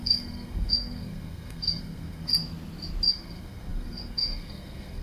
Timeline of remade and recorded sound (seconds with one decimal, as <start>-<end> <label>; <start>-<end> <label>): 0.0-2.3 remade; 2.3-3.1 recorded; 3.1-5.0 remade